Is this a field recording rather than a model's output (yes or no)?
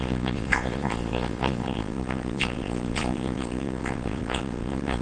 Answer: no